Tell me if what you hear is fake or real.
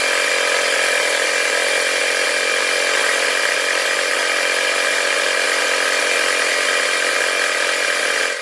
real